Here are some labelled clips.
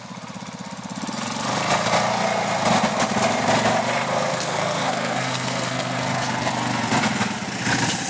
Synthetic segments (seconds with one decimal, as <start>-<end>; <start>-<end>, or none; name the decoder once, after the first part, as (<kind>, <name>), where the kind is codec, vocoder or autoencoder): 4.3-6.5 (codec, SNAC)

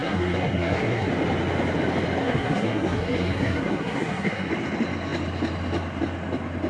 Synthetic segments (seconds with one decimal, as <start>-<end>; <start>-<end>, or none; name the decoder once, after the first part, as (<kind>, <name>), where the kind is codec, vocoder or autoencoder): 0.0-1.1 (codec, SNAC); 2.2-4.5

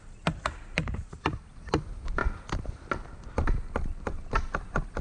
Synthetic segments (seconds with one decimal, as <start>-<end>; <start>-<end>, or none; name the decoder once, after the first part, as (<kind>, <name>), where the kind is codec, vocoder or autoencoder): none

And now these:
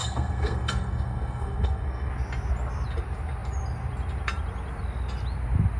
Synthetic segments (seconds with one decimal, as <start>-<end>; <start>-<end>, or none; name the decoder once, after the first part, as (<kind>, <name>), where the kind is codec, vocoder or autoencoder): 0.0-2.1 (codec, SNAC)